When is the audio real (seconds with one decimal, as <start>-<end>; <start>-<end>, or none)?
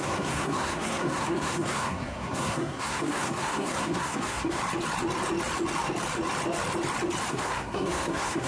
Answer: 4.6-7.3